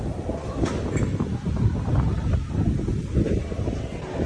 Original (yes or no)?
yes